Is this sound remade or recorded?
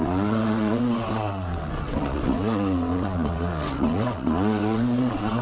remade